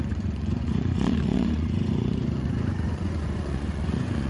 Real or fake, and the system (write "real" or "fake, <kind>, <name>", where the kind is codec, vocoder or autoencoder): fake, vocoder, Vocos